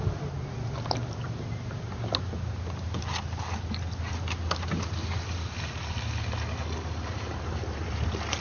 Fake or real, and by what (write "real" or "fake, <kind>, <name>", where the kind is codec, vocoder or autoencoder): real